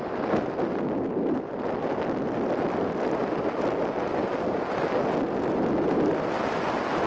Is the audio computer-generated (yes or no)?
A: no